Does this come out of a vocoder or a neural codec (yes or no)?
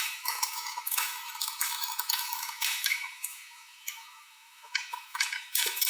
yes